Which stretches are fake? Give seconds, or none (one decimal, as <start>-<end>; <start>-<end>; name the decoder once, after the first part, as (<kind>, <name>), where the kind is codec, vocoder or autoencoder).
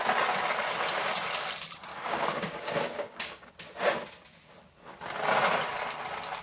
1.9-3.5 (codec, DAC)